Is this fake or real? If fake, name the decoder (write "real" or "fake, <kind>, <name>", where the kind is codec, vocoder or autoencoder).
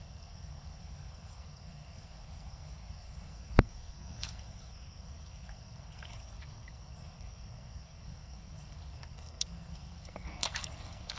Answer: fake, codec, SNAC